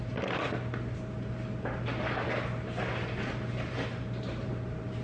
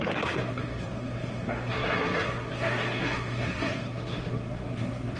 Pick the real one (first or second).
first